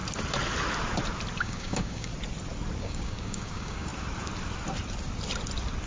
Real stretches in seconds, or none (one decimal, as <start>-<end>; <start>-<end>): 0.0-1.4; 2.1-2.8; 3.9-5.9